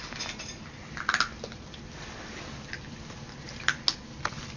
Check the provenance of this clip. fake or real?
real